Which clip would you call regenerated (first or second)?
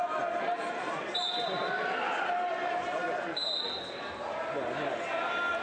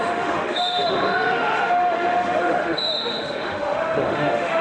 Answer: second